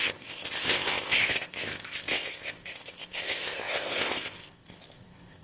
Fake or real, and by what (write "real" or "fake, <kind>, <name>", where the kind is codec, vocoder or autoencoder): fake, codec, ZipCodec